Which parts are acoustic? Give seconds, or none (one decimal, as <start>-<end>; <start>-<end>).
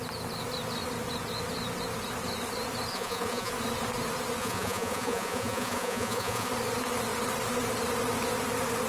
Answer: 0.0-2.9; 3.5-4.4; 6.5-8.9